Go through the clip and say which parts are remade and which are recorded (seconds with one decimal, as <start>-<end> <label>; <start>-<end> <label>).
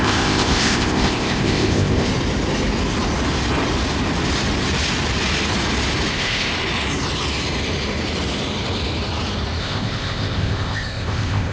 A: 0.0-2.1 remade; 2.1-6.1 recorded; 6.1-6.5 remade; 6.5-9.6 recorded; 9.6-11.5 remade